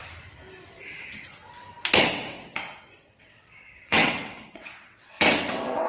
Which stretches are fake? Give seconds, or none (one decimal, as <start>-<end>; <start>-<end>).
2.0-5.9